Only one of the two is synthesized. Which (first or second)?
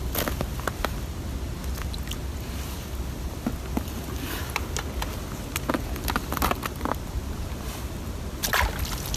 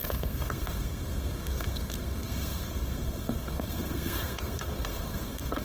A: second